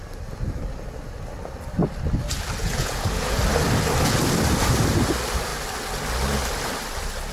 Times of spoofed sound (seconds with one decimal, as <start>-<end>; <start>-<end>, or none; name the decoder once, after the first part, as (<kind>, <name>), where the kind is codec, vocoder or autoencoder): 2.6-3.4 (vocoder, Vocos)